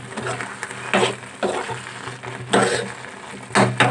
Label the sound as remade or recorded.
recorded